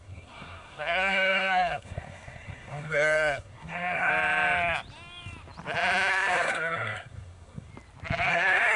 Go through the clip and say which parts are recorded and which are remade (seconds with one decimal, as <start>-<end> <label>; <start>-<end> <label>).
0.0-4.1 remade; 4.1-6.1 recorded; 6.1-7.7 remade; 7.7-8.3 recorded; 8.3-8.8 remade